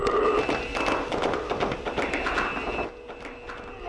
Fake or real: real